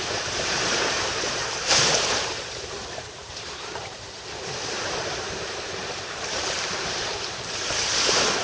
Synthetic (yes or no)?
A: yes